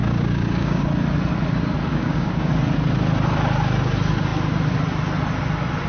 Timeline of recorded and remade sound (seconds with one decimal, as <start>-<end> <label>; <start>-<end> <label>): 0.0-0.8 remade; 0.8-1.9 recorded; 1.9-2.5 remade; 2.5-5.9 recorded